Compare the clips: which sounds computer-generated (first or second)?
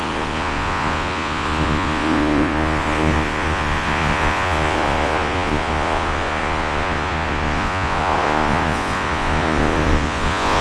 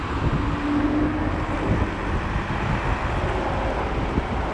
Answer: first